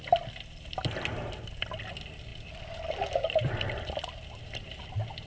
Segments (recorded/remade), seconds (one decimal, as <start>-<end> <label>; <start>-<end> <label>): 0.0-5.3 recorded